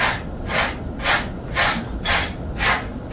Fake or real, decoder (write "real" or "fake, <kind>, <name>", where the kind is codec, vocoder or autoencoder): real